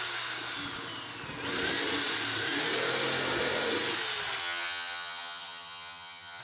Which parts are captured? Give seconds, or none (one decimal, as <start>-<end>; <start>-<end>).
0.0-4.4